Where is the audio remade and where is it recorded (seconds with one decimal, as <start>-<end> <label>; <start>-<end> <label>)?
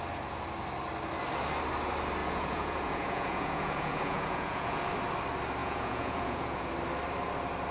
0.0-2.2 recorded; 2.2-4.8 remade; 4.8-5.6 recorded; 5.6-6.7 remade; 6.7-7.7 recorded